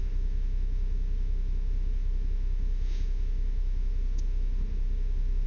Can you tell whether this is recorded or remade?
remade